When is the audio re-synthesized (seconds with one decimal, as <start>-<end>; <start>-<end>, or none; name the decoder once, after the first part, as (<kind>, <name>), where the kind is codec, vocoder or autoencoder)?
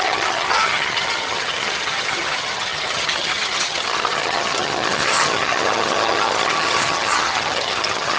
0.0-8.2 (vocoder, HiFi-GAN)